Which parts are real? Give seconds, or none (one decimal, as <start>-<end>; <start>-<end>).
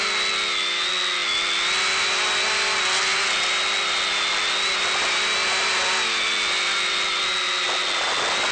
0.0-8.5